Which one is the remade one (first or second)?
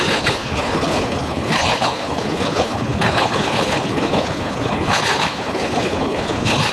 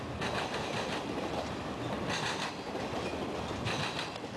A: first